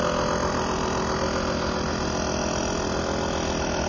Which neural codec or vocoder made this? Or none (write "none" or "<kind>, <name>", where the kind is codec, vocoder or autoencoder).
none